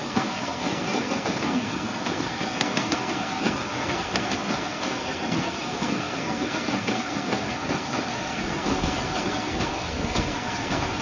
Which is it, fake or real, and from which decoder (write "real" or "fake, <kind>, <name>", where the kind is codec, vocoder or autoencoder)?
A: fake, codec, SNAC